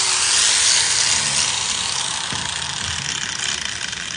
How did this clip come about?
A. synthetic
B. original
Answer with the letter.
B